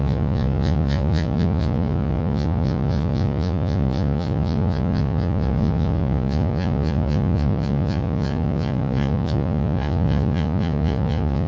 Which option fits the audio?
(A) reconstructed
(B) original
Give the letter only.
A